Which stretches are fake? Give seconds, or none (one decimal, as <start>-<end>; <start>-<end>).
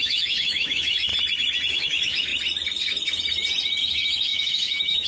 0.0-1.1; 1.7-2.3; 3.8-5.1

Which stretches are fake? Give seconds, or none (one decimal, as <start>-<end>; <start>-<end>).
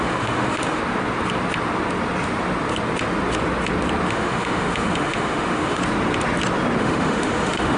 0.0-0.8; 4.1-5.8; 6.8-7.8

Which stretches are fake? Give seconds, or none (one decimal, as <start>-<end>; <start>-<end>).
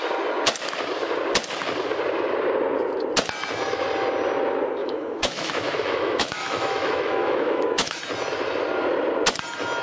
4.8-8.0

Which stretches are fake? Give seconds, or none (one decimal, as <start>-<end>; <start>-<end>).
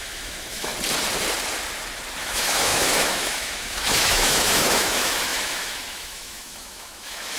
0.0-0.7; 2.2-7.4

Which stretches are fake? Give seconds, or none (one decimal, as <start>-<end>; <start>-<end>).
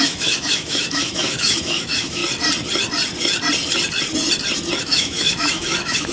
0.0-2.2; 4.8-6.1